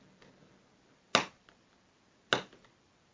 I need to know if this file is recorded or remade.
recorded